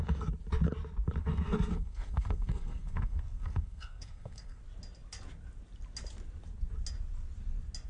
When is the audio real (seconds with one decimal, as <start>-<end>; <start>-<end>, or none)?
0.0-1.2; 4.6-7.9